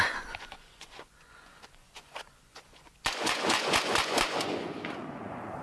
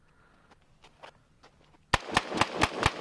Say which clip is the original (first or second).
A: second